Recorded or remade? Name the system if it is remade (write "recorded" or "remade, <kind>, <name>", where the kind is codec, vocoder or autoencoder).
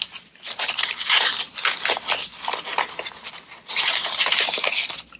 recorded